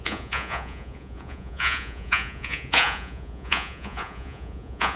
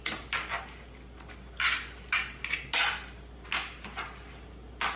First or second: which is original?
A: second